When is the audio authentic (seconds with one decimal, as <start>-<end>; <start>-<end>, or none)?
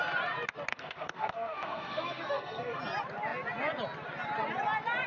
0.0-0.7; 2.8-5.1